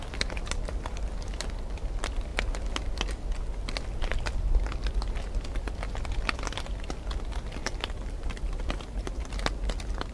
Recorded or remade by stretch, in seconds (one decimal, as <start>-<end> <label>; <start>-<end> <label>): 0.0-7.6 recorded; 7.6-9.2 remade; 9.2-10.1 recorded